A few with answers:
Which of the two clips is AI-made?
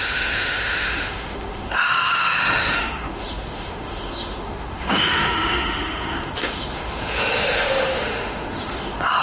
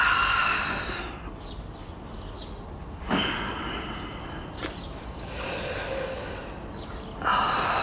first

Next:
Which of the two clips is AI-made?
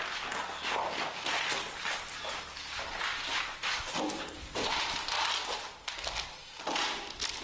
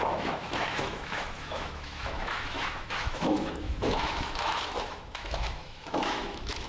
second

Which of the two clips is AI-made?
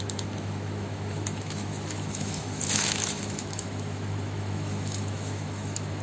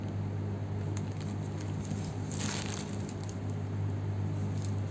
first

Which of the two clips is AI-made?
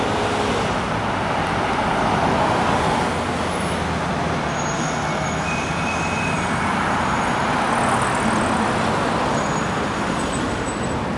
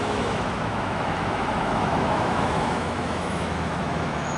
second